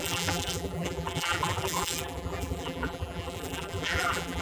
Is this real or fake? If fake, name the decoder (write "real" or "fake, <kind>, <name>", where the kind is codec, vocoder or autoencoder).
fake, vocoder, BigVGAN v2